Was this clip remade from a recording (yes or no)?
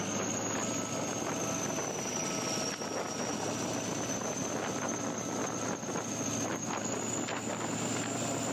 no